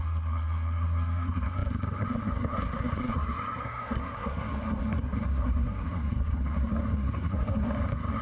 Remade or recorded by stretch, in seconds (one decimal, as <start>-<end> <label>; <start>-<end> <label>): 0.0-8.2 remade